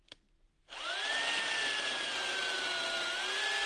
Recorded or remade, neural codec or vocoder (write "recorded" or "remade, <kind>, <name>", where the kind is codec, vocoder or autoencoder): recorded